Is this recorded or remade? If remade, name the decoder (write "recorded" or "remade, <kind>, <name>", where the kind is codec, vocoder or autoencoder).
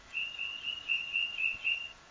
remade, vocoder, Vocos